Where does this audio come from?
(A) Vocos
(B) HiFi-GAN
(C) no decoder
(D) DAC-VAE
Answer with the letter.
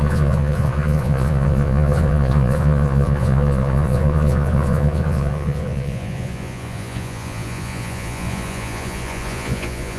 A